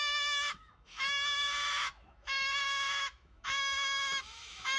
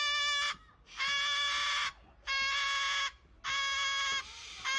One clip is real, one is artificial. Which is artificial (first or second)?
first